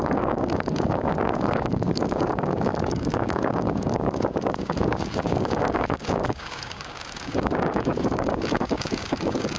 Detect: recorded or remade remade